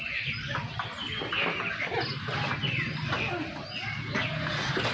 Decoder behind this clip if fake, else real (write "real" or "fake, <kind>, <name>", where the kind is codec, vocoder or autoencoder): real